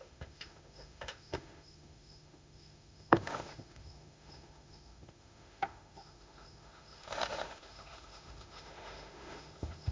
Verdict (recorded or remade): remade